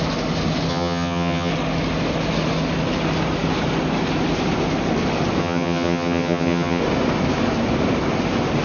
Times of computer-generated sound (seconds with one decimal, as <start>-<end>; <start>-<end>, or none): 0.7-1.5; 5.4-6.8